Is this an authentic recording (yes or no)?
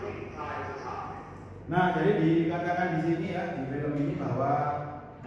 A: yes